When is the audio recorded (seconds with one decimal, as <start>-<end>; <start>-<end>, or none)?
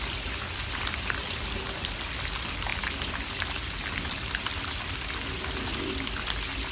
0.0-6.7